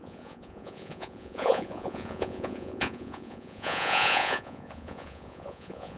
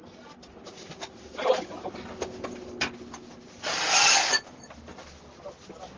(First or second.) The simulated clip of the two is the first